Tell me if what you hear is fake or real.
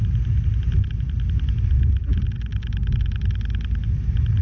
real